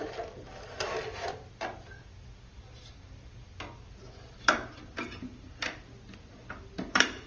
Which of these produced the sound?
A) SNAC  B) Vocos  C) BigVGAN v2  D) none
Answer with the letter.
C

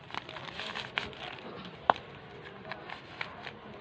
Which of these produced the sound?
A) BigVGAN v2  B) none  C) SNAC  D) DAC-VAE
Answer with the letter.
A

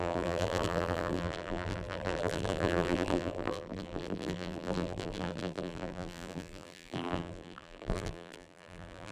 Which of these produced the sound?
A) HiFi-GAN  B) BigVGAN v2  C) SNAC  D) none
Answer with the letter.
B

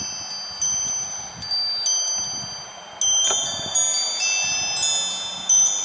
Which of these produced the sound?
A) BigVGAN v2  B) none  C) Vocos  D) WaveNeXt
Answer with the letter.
B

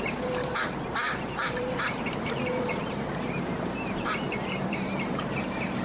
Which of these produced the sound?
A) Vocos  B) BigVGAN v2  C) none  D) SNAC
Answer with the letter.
B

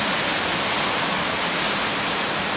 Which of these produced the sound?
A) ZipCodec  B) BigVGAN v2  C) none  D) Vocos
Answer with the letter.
B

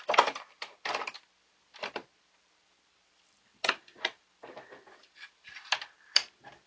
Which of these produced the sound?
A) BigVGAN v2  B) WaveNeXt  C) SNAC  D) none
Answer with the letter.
A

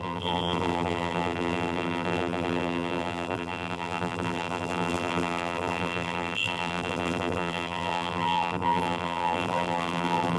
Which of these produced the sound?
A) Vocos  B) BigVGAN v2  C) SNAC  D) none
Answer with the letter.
B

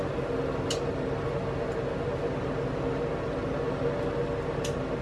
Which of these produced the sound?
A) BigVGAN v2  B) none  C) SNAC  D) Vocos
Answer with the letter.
B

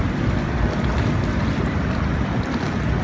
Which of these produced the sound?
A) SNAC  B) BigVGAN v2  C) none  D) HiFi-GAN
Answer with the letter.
B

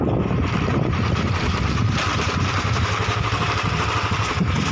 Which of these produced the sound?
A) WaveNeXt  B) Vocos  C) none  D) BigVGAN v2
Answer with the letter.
D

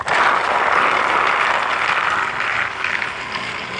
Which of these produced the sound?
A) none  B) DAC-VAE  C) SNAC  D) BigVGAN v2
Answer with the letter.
A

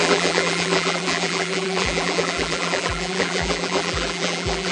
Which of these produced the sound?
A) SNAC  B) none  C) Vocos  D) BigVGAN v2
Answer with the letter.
D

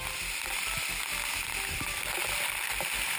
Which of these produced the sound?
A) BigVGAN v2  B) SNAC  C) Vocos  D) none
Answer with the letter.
D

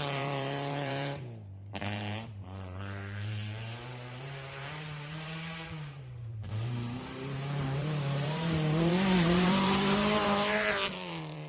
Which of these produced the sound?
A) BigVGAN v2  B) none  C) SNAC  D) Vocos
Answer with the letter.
A